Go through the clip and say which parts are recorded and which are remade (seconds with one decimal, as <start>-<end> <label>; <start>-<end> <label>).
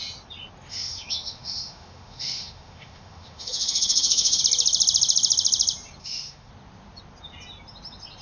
0.0-0.7 recorded; 0.7-4.4 remade; 4.4-6.0 recorded; 6.0-6.5 remade; 6.5-8.2 recorded